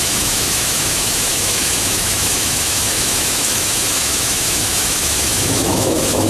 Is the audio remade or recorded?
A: remade